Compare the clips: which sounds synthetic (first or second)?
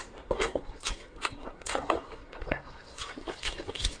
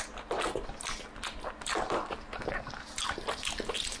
first